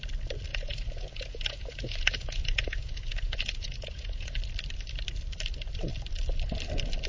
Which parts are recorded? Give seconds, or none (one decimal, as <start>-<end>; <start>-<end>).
0.0-0.5; 4.3-7.1